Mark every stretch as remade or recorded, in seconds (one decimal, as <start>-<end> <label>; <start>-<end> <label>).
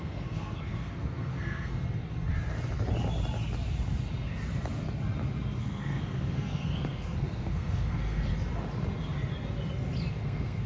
0.0-1.7 remade; 1.7-5.6 recorded; 5.6-8.3 remade; 8.3-10.1 recorded; 10.1-10.7 remade